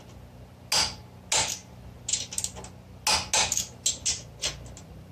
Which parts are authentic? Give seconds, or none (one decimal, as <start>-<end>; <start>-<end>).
0.0-5.1